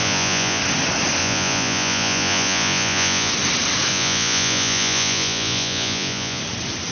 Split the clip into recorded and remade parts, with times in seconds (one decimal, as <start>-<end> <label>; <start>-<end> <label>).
0.0-0.6 remade; 0.6-1.2 recorded; 1.2-3.3 remade; 3.3-3.9 recorded; 3.9-6.4 remade; 6.4-6.9 recorded